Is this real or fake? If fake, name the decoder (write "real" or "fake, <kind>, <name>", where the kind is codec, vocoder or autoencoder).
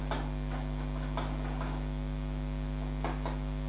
real